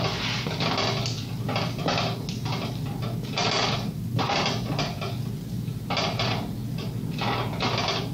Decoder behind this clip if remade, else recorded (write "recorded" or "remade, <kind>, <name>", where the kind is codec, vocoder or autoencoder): recorded